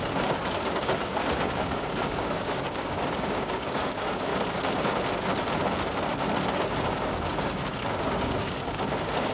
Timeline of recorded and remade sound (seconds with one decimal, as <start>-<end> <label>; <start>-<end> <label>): 0.0-4.3 remade; 4.3-6.9 recorded; 6.9-9.3 remade